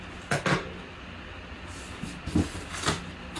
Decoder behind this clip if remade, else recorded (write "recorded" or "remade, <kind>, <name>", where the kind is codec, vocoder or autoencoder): recorded